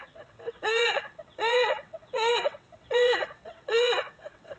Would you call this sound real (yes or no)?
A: no